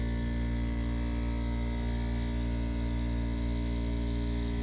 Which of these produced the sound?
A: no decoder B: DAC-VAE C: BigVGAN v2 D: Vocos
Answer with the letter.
A